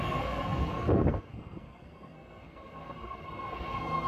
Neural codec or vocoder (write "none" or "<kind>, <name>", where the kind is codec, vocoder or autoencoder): codec, SNAC